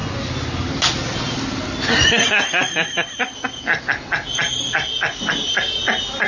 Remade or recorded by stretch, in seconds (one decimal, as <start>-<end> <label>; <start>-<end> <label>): 0.0-6.3 recorded